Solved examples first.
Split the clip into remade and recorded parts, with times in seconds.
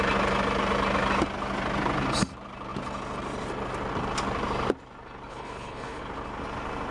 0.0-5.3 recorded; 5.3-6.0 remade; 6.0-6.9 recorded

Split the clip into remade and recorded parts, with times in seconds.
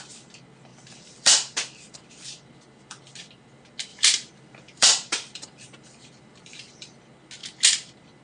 0.0-0.7 recorded; 0.7-2.1 remade; 2.1-3.9 recorded; 3.9-7.0 remade; 7.0-8.2 recorded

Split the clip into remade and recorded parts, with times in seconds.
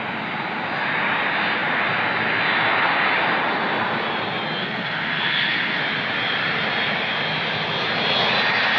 0.0-4.6 recorded; 4.6-5.8 remade; 5.8-8.8 recorded